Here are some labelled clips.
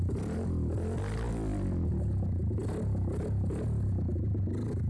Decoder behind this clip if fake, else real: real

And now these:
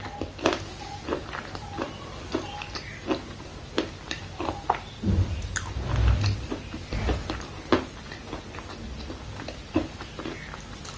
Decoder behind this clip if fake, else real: real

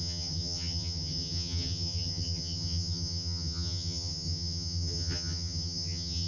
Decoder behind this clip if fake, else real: fake, vocoder, HiFi-GAN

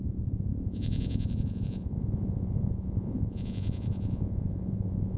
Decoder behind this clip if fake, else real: fake, vocoder, Vocos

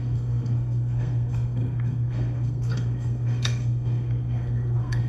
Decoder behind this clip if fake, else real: fake, codec, SNAC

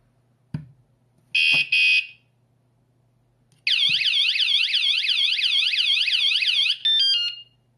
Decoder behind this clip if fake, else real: real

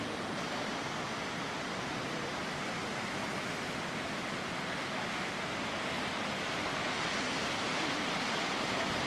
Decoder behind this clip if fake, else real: real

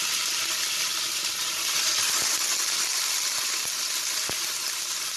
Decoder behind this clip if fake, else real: real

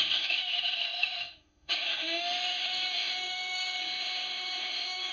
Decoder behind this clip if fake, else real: fake, autoencoder, DAC-VAE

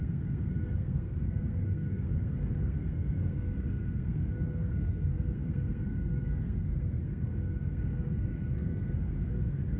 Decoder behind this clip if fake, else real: fake, codec, SNAC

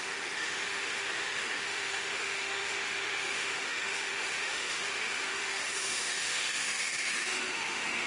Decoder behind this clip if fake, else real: fake, autoencoder, DAC-VAE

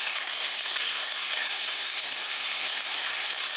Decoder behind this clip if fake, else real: fake, codec, SNAC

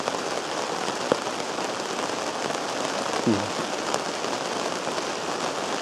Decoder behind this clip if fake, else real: real